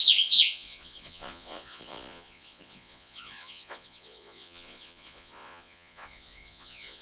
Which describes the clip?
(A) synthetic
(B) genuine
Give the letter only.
A